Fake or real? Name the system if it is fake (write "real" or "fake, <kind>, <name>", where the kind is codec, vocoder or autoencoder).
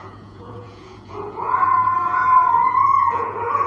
fake, vocoder, Vocos